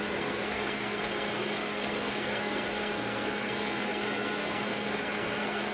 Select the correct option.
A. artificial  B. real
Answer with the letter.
A